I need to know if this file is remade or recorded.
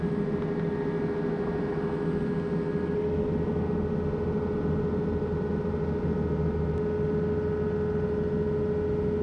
recorded